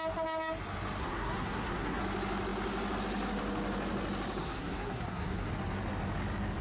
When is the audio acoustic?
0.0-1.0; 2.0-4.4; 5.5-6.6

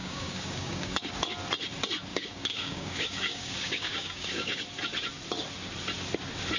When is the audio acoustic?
1.1-2.1; 4.6-6.6

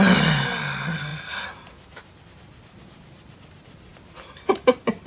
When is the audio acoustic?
0.0-5.1

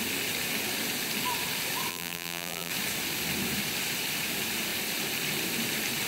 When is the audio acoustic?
0.0-1.9; 2.7-6.1

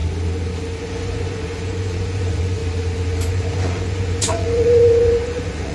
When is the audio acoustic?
0.0-0.8; 2.6-3.3

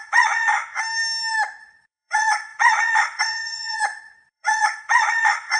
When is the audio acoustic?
0.5-1.6

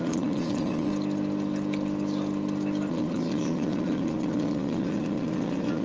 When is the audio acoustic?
0.9-2.9

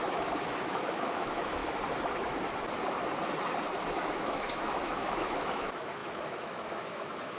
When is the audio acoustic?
1.6-3.9